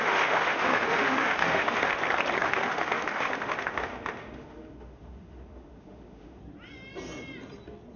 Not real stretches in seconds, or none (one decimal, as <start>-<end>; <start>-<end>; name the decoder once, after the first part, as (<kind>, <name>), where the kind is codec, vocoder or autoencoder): 0.0-2.0 (autoencoder, DAC-VAE); 2.4-6.4